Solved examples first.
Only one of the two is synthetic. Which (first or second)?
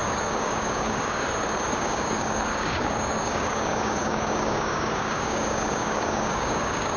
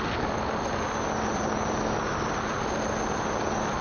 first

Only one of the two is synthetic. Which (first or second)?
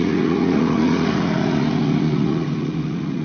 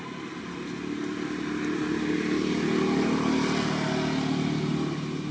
first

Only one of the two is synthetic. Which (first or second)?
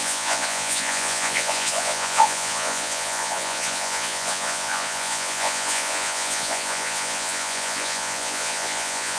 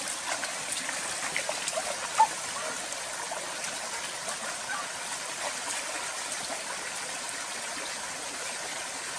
first